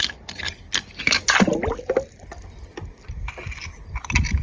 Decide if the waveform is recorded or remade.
recorded